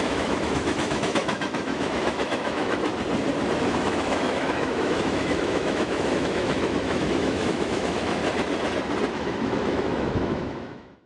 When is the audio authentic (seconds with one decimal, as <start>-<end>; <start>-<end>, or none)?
2.9-3.7; 8.2-9.1